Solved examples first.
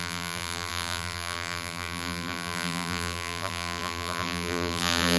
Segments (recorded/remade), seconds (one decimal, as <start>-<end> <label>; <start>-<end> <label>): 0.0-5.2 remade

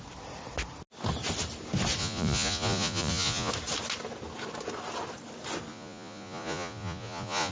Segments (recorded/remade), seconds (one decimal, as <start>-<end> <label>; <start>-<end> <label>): 0.0-2.0 recorded; 2.0-3.5 remade; 3.5-5.7 recorded; 5.7-7.5 remade

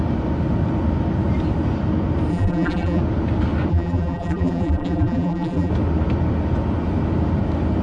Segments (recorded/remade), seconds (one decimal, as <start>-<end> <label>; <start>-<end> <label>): 0.0-2.3 recorded; 2.3-3.0 remade; 3.0-3.7 recorded; 3.7-5.7 remade; 5.7-7.8 recorded